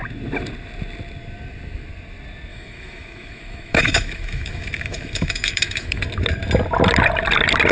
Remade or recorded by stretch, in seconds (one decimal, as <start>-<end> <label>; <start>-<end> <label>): 0.0-2.5 recorded; 2.5-6.0 remade; 6.0-7.7 recorded